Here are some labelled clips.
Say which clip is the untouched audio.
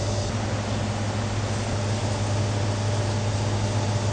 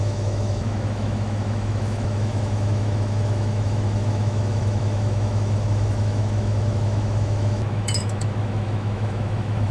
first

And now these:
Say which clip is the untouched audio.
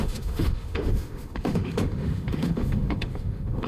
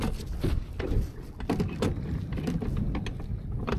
second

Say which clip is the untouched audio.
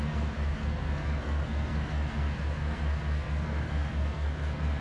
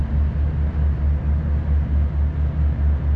second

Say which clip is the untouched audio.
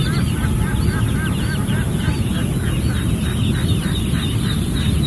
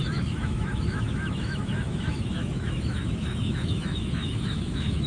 first